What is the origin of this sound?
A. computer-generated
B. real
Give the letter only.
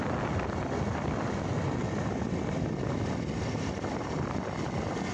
B